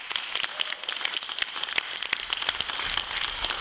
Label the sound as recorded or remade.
recorded